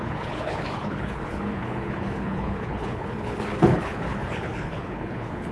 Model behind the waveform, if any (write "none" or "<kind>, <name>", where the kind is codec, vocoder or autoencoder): codec, HILCodec